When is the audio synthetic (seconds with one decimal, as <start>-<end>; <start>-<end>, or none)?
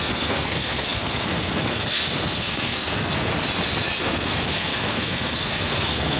0.0-3.3; 4.0-6.2